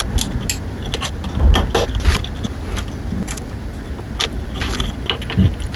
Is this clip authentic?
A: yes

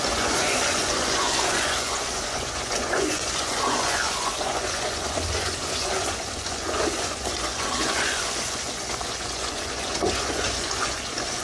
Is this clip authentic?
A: no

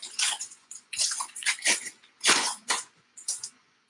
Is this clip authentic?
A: no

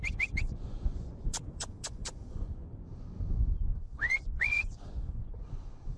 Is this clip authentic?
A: no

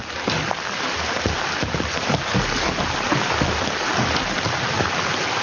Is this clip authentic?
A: yes